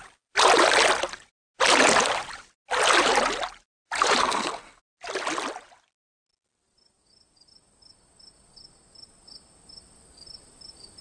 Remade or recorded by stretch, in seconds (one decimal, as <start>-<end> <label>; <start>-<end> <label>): 0.0-4.2 recorded; 4.2-4.8 remade; 4.8-11.0 recorded